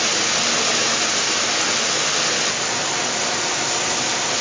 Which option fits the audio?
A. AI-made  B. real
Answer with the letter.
B